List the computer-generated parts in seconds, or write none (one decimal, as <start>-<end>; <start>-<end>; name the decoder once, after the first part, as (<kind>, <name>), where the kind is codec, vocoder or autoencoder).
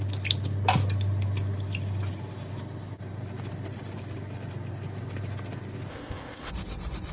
5.9-6.5 (codec, ZipCodec)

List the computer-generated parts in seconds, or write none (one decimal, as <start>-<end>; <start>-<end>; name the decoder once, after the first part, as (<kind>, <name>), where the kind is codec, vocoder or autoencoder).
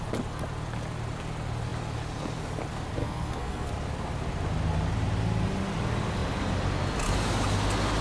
3.0-3.7 (codec, SNAC)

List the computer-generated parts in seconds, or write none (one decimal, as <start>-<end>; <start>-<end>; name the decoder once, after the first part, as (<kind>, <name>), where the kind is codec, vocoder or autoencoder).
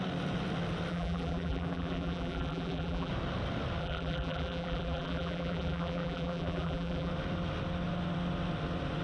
0.9-3.1 (vocoder, BigVGAN v2); 3.8-7.1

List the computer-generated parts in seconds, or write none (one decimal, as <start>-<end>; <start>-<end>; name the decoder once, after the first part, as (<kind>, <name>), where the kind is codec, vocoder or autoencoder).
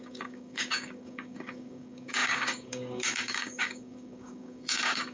0.0-5.1 (codec, DAC)